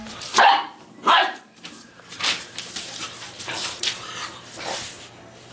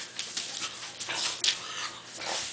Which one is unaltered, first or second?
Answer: second